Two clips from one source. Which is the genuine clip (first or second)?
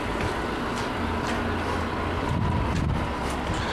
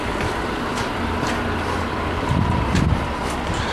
first